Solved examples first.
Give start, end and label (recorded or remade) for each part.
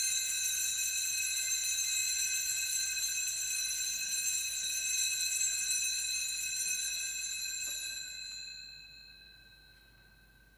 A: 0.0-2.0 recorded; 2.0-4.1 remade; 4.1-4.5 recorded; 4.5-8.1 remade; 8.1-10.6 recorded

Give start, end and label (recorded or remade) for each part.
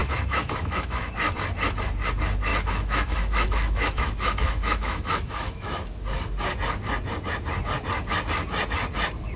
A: 0.0-1.1 remade; 1.1-2.5 recorded; 2.5-5.9 remade; 5.9-9.4 recorded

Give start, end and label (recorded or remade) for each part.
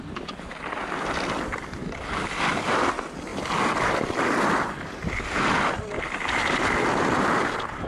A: 0.0-7.9 recorded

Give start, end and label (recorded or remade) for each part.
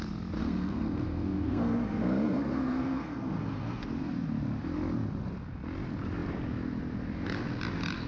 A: 0.0-0.4 recorded; 0.4-3.9 remade; 3.9-8.1 recorded